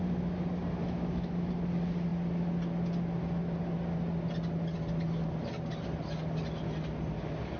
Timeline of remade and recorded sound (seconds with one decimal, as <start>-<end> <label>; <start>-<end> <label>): 0.0-0.8 recorded; 0.8-1.5 remade; 1.5-7.6 recorded